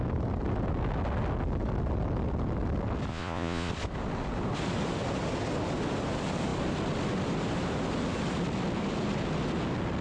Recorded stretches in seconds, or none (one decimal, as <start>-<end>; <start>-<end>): 0.0-3.1; 3.7-10.0